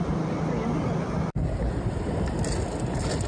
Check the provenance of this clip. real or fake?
real